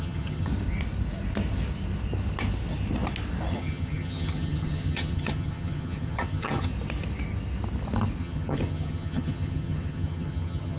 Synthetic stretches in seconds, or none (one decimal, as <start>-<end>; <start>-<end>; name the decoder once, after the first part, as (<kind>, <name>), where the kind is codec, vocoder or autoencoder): 0.0-0.5 (vocoder, HiFi-GAN); 3.5-6.7; 8.2-10.8